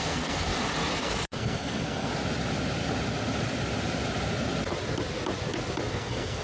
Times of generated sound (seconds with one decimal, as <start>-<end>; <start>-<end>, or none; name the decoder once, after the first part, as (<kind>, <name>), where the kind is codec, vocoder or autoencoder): 0.0-0.5 (codec, SNAC); 1.0-2.1; 5.9-6.4